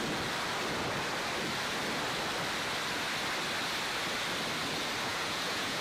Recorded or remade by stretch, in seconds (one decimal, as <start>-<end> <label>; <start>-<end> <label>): 0.0-5.1 recorded; 5.1-5.8 remade